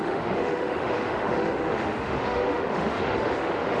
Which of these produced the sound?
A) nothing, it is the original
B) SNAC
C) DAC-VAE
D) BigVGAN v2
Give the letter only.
C